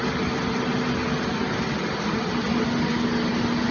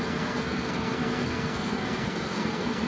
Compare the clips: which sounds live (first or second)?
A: first